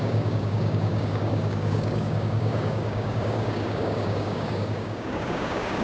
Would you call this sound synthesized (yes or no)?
yes